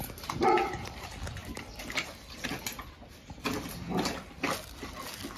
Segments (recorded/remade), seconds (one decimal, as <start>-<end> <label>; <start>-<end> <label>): 0.0-5.4 recorded